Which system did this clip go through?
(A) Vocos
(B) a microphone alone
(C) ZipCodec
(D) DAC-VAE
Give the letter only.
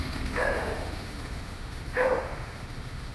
D